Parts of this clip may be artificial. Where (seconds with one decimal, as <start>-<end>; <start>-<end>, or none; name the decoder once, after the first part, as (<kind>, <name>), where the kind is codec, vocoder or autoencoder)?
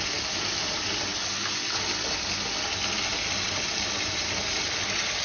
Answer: none